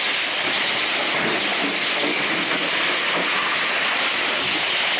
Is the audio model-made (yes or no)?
no